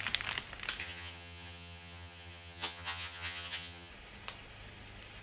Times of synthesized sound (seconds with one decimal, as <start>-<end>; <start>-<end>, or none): 0.8-3.9